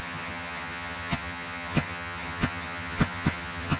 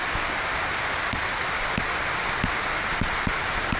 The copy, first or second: first